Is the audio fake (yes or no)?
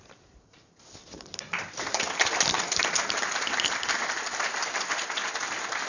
no